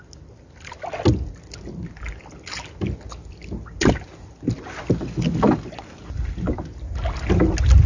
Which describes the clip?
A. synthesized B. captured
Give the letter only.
B